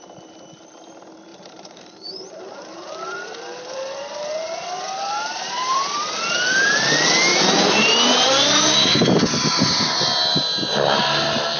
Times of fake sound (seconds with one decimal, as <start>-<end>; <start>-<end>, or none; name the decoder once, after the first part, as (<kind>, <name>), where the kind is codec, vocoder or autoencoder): 1.3-6.2 (vocoder, BigVGAN v2); 7.3-8.9